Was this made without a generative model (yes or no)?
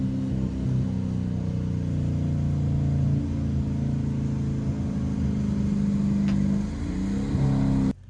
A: yes